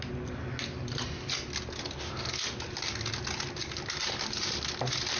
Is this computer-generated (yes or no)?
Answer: no